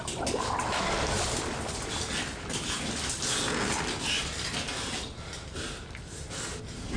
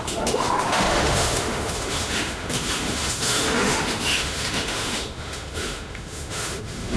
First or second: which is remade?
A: second